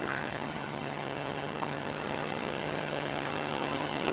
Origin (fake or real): fake